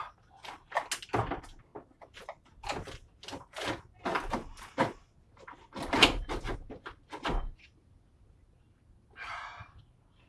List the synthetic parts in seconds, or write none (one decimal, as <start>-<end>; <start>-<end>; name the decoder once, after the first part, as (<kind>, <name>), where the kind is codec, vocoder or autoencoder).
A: none